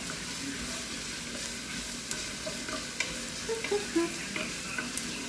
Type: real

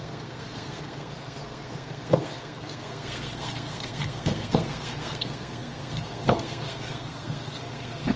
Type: fake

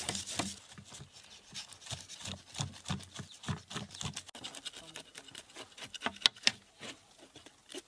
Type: real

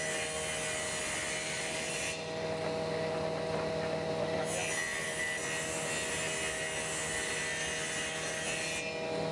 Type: real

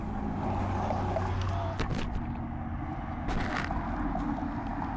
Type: real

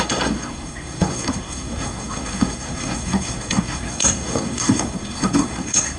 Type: fake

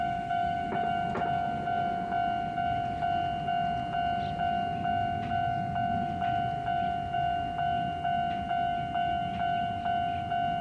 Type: real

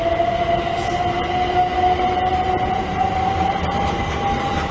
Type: real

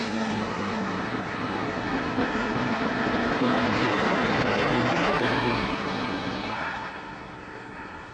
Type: fake